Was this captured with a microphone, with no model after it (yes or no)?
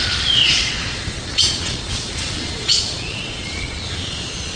no